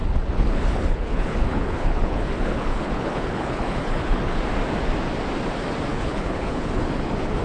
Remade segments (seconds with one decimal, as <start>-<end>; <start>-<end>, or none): 0.0-4.4; 5.9-7.4